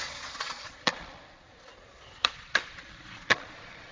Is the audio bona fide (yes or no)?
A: no